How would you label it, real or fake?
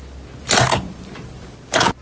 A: real